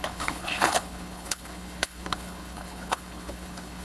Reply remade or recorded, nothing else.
remade